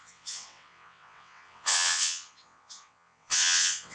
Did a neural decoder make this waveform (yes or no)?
yes